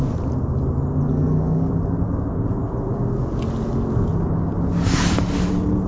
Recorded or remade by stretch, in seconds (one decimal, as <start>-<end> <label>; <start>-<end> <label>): 0.0-1.1 recorded; 1.1-1.7 remade; 1.7-5.9 recorded